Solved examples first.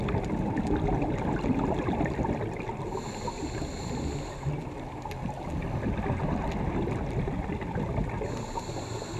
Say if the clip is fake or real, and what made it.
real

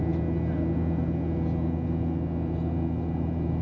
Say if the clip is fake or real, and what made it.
real